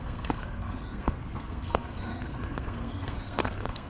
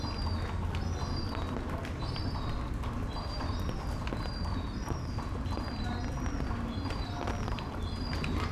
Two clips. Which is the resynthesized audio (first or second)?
first